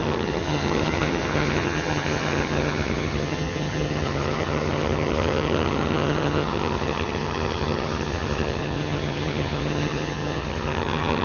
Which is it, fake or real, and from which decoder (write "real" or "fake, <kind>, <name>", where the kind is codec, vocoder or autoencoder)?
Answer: fake, vocoder, HiFi-GAN